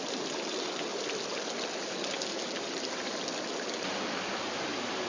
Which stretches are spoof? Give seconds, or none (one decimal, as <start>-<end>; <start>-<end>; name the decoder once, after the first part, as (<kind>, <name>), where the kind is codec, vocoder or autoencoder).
none